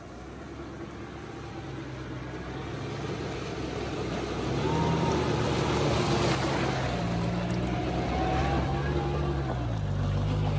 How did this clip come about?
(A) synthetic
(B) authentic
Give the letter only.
B